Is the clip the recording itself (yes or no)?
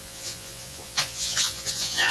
no